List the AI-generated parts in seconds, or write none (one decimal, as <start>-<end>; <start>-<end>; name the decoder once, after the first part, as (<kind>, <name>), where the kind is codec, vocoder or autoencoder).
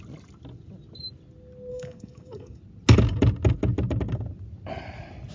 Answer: 1.7-2.6 (codec, DAC)